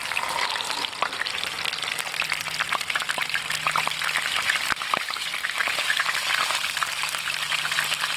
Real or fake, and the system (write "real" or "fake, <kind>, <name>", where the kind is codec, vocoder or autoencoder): real